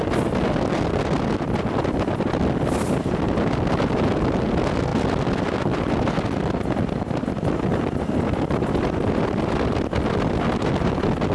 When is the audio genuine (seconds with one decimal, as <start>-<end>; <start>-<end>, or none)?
0.0-7.7; 10.3-11.3